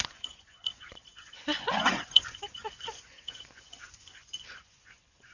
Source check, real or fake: fake